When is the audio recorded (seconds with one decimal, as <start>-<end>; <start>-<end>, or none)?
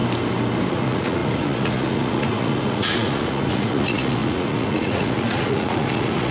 0.0-0.7